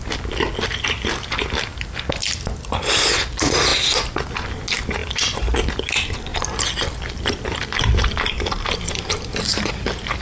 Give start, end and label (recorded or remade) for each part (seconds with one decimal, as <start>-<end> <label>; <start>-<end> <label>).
0.0-5.0 recorded; 5.0-5.8 remade; 5.8-6.3 recorded; 6.3-9.7 remade; 9.7-10.2 recorded